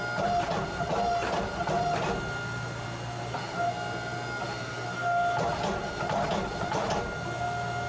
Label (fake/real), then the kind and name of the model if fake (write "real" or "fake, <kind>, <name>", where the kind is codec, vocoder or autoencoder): real